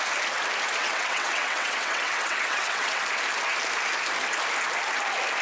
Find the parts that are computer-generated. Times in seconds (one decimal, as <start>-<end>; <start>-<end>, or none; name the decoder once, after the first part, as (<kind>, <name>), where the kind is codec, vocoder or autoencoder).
0.8-3.0 (vocoder, WaveNeXt)